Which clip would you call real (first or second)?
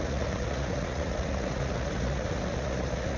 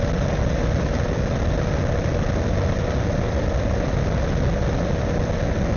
second